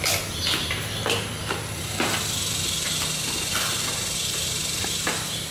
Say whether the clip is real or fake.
real